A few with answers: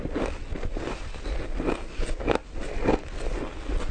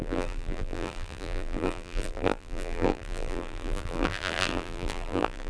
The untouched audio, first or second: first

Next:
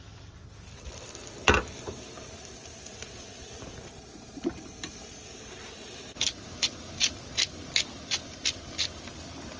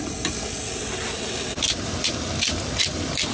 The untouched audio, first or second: second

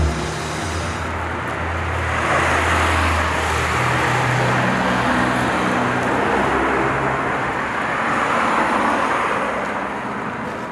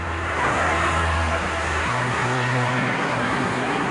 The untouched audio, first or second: first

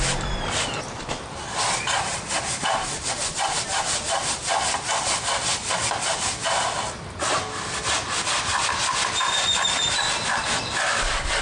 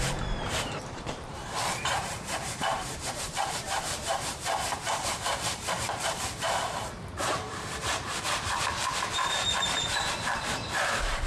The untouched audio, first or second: first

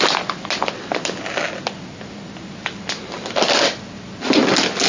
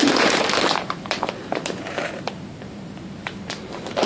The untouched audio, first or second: first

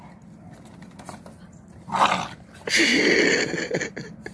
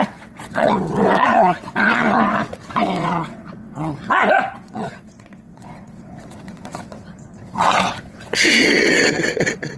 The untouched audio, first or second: first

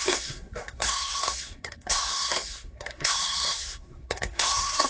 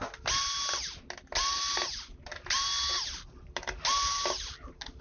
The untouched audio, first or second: second